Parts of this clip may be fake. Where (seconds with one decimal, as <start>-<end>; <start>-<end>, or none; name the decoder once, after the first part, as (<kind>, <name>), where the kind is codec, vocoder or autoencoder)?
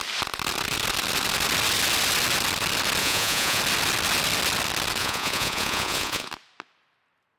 3.0-3.6 (vocoder, Vocos); 5.0-6.3